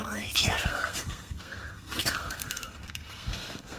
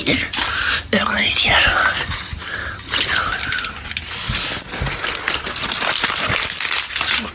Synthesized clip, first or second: first